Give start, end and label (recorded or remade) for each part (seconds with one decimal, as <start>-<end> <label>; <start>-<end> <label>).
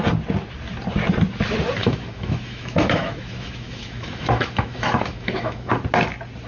0.0-1.8 recorded; 1.8-5.7 remade; 5.7-6.5 recorded